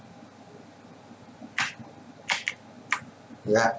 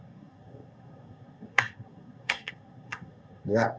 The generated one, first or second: second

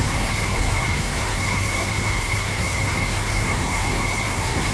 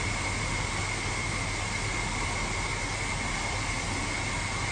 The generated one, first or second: first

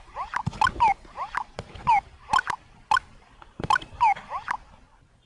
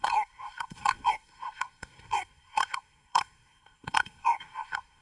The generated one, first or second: second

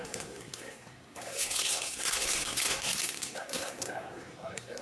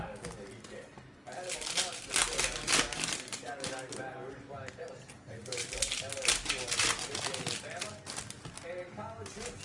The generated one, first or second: first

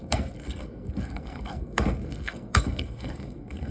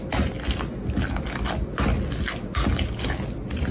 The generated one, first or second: first